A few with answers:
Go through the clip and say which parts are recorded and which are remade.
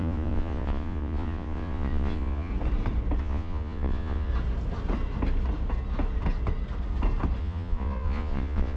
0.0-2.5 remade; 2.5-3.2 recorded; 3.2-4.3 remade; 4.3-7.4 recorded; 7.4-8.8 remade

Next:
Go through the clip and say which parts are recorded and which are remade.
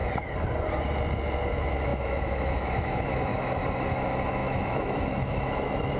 0.0-1.5 recorded; 1.5-3.3 remade; 3.3-3.9 recorded; 3.9-6.0 remade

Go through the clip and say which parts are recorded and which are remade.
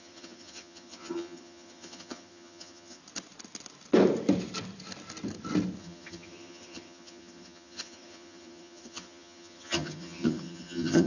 0.0-3.0 remade; 3.0-5.8 recorded; 5.8-11.1 remade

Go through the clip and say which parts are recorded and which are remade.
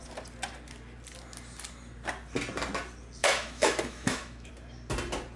0.0-3.2 recorded; 3.2-4.5 remade; 4.5-5.4 recorded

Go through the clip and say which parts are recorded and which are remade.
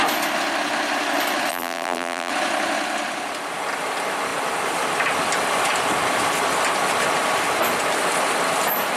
0.0-1.5 recorded; 1.5-2.3 remade; 2.3-9.0 recorded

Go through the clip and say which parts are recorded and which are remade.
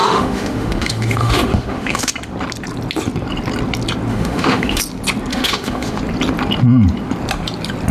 0.0-2.1 remade; 2.1-4.1 recorded; 4.1-4.8 remade; 4.8-5.3 recorded; 5.3-6.0 remade; 6.0-7.9 recorded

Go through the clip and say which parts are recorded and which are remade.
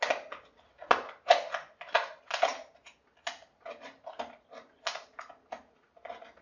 0.0-6.4 recorded